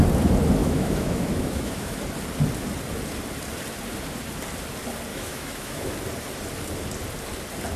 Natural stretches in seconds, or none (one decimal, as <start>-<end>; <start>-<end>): 0.0-0.6; 2.0-5.1; 5.9-7.8